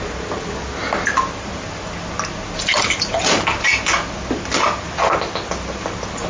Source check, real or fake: real